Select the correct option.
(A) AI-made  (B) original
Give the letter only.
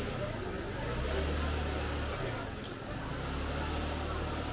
B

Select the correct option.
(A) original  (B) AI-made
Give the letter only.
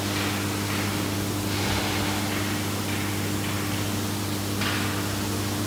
A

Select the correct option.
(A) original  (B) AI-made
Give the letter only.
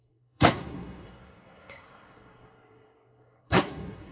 B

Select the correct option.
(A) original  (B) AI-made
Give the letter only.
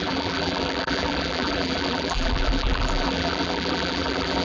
B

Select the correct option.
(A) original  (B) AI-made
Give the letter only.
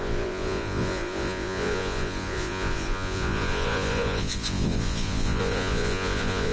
B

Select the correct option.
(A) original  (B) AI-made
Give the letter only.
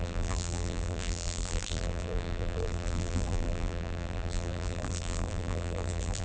B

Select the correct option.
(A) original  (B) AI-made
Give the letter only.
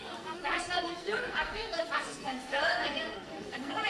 B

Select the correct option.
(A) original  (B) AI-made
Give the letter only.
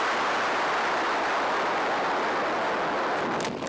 A